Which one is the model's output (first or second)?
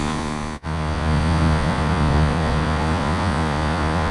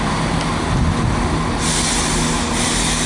first